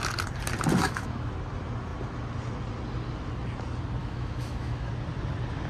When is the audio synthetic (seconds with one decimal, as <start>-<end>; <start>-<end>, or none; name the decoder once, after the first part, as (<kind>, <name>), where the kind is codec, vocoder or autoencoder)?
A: 0.8-1.3 (autoencoder, DAC-VAE); 4.0-4.9

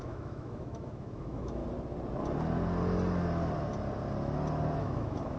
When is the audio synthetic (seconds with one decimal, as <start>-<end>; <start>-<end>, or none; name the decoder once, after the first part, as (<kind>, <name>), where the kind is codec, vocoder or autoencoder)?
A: 0.0-1.6 (autoencoder, DAC-VAE); 4.8-5.4

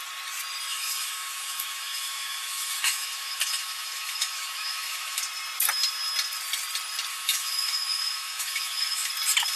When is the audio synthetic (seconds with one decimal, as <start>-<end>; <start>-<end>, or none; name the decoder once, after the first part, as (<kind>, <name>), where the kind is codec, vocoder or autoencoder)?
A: 0.7-5.2 (autoencoder, DAC-VAE); 7.1-9.1

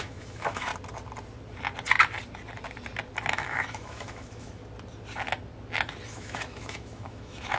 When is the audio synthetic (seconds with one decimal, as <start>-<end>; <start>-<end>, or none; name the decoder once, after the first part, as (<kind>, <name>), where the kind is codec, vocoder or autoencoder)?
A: 0.0-0.7 (autoencoder, DAC-VAE); 3.3-4.6; 6.1-7.6

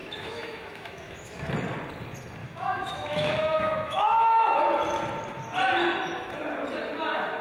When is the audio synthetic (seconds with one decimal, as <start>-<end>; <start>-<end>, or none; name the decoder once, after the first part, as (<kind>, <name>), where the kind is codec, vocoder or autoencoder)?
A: 0.0-1.5 (autoencoder, DAC-VAE); 2.4-4.6

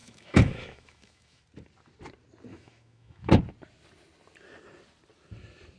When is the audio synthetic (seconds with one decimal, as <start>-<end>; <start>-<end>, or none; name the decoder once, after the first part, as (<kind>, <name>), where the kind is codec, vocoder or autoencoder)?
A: 0.0-1.4 (autoencoder, DAC-VAE); 2.5-3.4

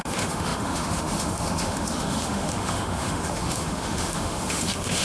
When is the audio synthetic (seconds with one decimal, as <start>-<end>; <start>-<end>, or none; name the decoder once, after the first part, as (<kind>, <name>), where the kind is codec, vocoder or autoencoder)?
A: 0.0-5.0 (autoencoder, DAC-VAE)

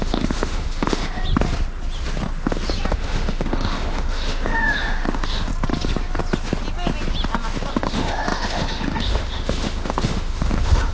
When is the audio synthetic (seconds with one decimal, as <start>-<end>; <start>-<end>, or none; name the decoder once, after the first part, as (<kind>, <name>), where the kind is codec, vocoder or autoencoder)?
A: 0.0-1.2 (autoencoder, DAC-VAE); 2.9-5.5; 7.7-10.9